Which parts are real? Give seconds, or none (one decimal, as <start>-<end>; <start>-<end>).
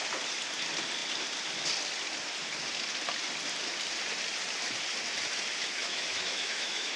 0.0-5.8